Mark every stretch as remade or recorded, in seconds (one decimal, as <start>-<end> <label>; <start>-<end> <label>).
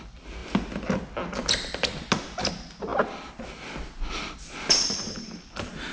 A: 0.0-5.9 recorded